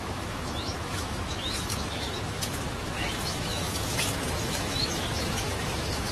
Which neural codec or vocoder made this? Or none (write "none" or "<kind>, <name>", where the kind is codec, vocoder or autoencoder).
autoencoder, DAC-VAE